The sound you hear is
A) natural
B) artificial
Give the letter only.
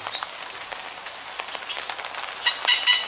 A